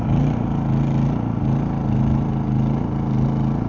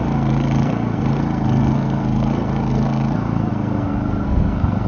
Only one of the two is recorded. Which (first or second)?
first